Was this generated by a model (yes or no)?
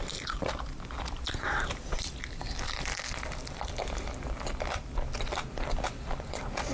yes